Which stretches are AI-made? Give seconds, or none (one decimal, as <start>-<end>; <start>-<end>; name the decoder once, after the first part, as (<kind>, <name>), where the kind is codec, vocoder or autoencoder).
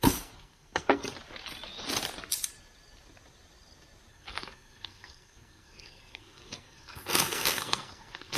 0.0-1.0 (codec, SNAC); 4.1-8.4